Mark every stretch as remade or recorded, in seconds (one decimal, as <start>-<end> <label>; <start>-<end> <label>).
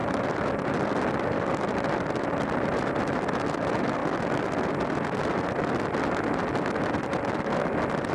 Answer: 0.0-8.1 recorded